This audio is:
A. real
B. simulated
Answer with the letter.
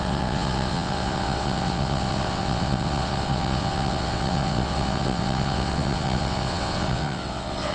B